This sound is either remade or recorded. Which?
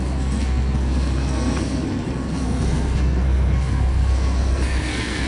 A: remade